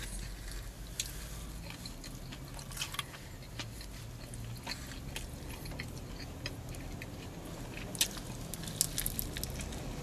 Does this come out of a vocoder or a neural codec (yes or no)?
no